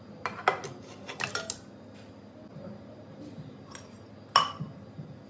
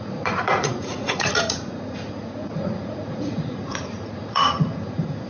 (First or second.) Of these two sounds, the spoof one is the second